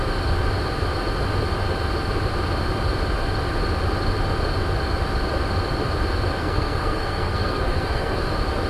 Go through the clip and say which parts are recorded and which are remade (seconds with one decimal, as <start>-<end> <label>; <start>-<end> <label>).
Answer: 0.0-6.4 recorded; 6.4-8.2 remade; 8.2-8.7 recorded